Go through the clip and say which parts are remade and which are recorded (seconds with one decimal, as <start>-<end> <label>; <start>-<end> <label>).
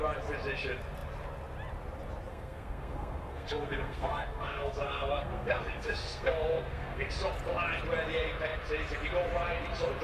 0.0-2.3 recorded; 2.3-7.1 remade; 7.1-10.0 recorded